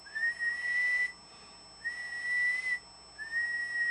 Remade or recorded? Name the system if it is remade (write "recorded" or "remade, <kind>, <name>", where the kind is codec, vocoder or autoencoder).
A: recorded